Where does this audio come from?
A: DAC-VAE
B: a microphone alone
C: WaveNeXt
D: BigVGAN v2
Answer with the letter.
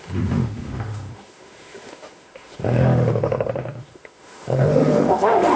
A